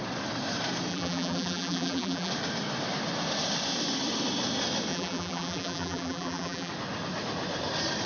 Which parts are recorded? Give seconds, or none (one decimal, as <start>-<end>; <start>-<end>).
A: 0.0-0.9; 2.3-4.9; 6.7-8.1